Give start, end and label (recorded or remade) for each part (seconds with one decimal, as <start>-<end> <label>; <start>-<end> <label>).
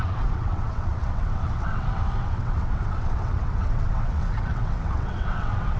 0.0-5.8 remade